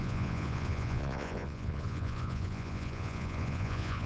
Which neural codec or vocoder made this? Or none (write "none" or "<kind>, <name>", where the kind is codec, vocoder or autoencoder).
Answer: vocoder, Vocos